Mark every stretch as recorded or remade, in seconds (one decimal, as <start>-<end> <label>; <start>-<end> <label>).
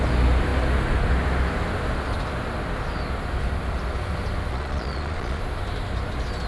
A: 0.0-4.5 recorded; 4.5-5.4 remade; 5.4-6.5 recorded